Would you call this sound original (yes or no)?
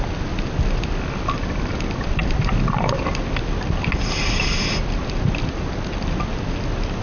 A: yes